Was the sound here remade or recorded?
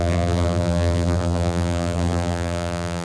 remade